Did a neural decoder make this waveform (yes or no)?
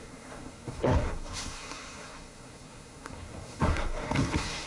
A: yes